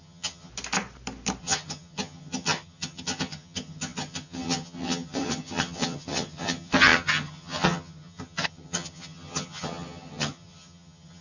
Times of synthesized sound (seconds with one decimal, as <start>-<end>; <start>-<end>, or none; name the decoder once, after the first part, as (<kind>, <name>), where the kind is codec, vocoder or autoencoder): 0.0-0.5 (vocoder, HiFi-GAN); 1.4-11.2